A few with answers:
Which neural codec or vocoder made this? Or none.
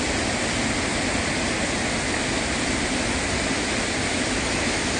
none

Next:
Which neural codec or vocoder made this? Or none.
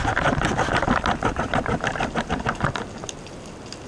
none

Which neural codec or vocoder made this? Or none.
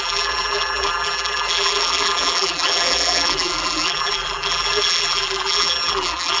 vocoder, BigVGAN v2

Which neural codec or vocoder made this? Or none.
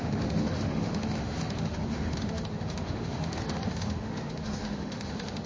autoencoder, DAC-VAE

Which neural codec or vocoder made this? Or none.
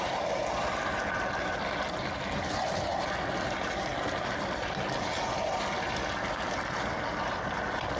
none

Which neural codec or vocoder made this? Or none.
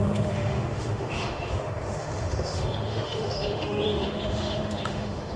autoencoder, DAC-VAE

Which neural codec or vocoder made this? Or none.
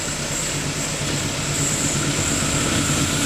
none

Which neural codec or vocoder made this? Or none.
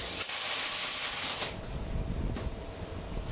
none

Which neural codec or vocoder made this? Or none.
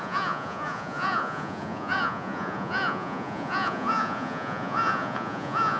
vocoder, Vocos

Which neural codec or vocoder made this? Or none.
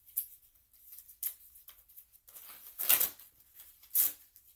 none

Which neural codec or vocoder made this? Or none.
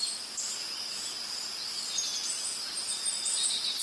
none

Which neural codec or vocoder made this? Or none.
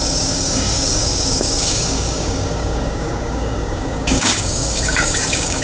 codec, DAC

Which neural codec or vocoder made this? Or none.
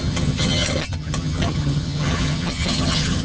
vocoder, HiFi-GAN